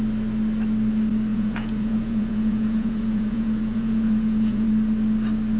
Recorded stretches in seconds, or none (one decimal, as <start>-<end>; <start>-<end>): 0.0-1.3; 4.7-5.6